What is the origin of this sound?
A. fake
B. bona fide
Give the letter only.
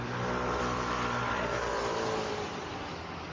A